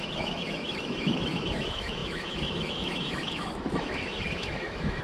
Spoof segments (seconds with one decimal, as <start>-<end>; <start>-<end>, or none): 0.0-5.0